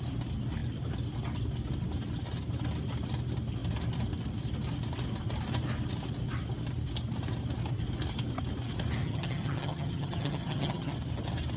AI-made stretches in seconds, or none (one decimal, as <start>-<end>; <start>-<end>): 9.0-10.9